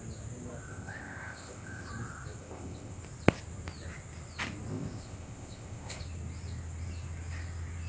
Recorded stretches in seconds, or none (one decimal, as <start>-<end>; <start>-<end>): 0.0-0.7; 1.9-2.4; 3.0-4.7; 6.0-7.9